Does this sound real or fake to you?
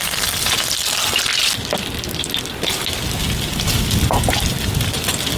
real